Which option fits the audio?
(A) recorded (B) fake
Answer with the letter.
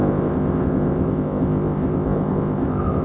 B